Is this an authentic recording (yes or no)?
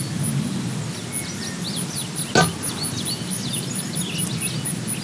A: yes